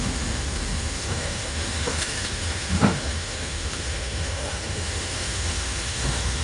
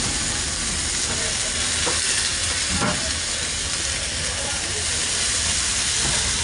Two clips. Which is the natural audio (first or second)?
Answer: second